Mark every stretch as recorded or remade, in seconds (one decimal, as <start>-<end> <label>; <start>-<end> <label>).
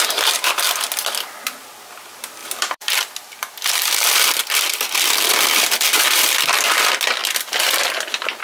0.0-2.4 recorded; 2.4-4.1 remade; 4.1-8.4 recorded